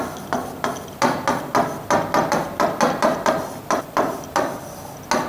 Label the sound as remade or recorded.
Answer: recorded